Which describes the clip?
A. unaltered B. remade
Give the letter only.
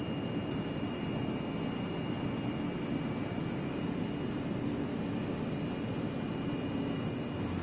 A